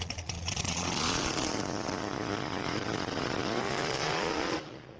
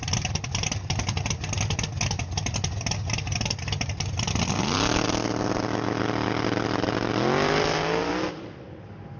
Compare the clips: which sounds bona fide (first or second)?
second